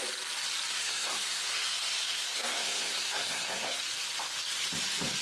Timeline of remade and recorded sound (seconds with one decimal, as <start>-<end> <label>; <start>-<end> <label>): 0.0-0.7 recorded; 0.7-3.8 remade; 3.8-5.2 recorded